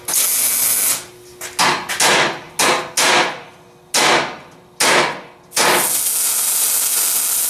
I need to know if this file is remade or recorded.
recorded